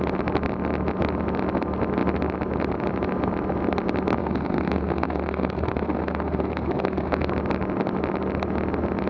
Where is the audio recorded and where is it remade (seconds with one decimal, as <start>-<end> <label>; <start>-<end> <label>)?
0.0-4.2 recorded; 4.2-7.3 remade; 7.3-9.1 recorded